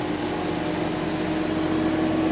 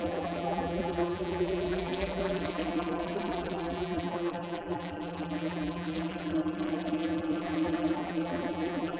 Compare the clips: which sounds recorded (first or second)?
first